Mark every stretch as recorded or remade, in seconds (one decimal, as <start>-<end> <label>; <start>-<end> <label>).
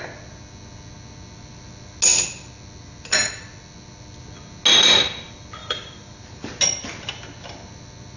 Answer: 0.0-5.6 recorded; 5.6-6.5 remade; 6.5-8.2 recorded